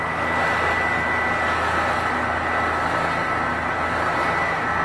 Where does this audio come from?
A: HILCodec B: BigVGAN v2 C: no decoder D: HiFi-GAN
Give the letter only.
C